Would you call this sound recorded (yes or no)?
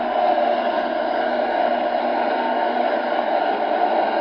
yes